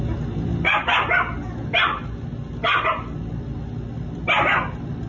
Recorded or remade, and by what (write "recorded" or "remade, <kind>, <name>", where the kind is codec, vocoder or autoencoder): recorded